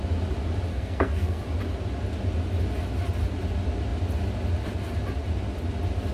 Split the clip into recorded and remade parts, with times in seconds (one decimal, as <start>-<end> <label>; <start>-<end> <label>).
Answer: 0.0-0.7 recorded; 0.7-1.4 remade; 1.4-6.1 recorded